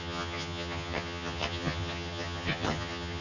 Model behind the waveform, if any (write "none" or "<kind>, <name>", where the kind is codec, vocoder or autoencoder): vocoder, HiFi-GAN